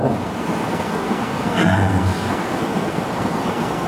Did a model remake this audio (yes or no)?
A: yes